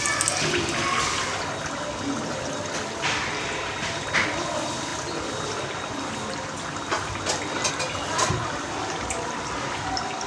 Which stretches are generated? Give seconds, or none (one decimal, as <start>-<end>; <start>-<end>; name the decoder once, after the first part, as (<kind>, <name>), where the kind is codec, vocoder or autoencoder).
none